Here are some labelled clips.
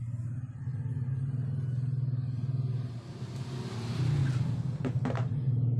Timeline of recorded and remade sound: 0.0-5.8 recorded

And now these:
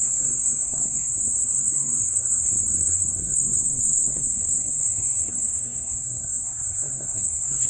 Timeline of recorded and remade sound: 0.0-7.7 remade

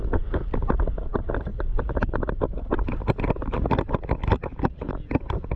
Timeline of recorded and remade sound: 0.0-5.6 recorded